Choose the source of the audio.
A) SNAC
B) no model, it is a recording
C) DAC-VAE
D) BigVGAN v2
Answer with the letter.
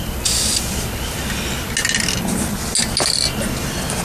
B